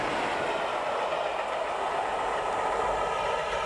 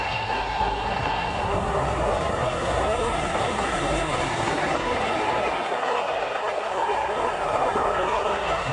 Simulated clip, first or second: second